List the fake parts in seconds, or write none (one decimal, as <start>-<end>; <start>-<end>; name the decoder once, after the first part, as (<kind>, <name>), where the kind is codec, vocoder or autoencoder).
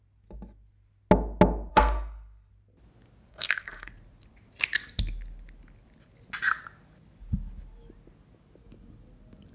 1.7-2.5 (codec, SNAC); 3.3-3.9